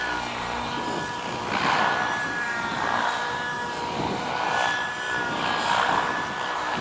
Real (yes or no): yes